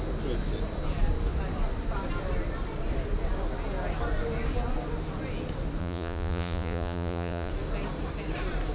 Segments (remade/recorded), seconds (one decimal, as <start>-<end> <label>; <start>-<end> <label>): 0.0-5.8 recorded; 5.8-7.5 remade; 7.5-8.7 recorded